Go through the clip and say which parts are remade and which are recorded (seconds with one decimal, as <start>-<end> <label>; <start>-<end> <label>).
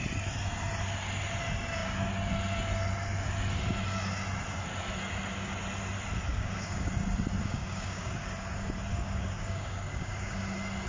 0.0-6.3 recorded; 6.3-6.9 remade; 6.9-7.4 recorded; 7.4-8.1 remade; 8.1-8.9 recorded; 8.9-10.4 remade; 10.4-10.9 recorded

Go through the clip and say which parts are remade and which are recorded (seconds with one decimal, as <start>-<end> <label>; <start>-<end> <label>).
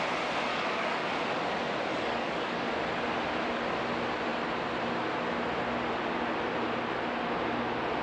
0.0-0.5 recorded; 0.5-1.1 remade; 1.1-1.9 recorded; 1.9-2.7 remade; 2.7-8.0 recorded